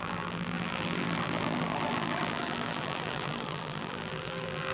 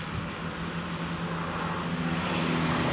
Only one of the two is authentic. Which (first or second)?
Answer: second